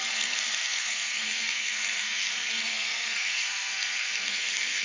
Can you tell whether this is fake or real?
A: fake